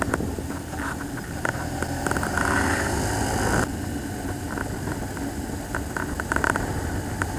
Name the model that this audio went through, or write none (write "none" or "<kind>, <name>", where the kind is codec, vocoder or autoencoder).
none